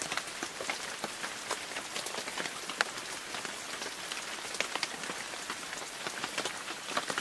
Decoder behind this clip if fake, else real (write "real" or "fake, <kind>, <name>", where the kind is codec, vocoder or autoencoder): real